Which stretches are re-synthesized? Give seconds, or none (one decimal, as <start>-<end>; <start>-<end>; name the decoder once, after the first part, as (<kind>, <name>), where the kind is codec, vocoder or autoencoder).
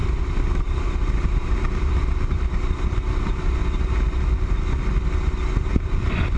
0.0-3.6 (vocoder, BigVGAN v2); 5.7-6.4